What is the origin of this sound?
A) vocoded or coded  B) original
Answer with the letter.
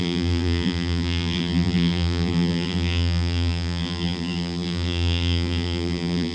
A